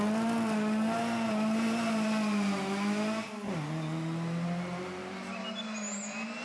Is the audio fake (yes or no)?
no